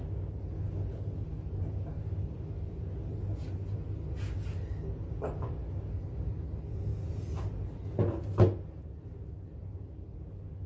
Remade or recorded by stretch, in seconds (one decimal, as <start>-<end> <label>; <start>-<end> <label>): 0.0-10.7 recorded